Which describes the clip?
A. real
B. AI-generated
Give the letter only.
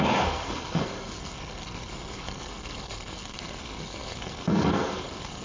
B